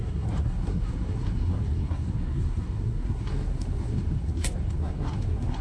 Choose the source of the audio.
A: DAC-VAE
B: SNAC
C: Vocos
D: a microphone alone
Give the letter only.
B